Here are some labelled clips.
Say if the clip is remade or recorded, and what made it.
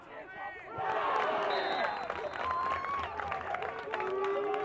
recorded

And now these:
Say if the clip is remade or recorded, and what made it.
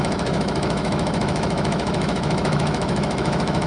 remade, autoencoder, DAC-VAE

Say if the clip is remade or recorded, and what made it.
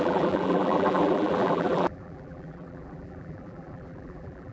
remade, vocoder, BigVGAN v2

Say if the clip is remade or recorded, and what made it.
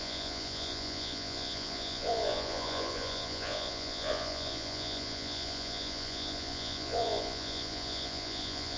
remade, vocoder, Vocos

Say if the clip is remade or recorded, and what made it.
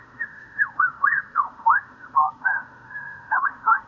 remade, autoencoder, DAC-VAE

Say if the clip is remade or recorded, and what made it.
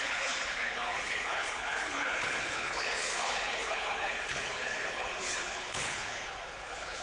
remade, codec, HILCodec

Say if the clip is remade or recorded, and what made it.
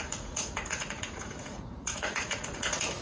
remade, vocoder, Vocos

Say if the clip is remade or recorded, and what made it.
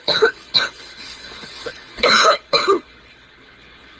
remade, codec, HILCodec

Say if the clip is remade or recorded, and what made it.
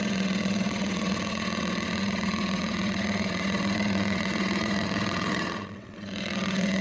remade, vocoder, WaveNeXt